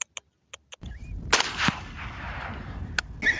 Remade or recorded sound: recorded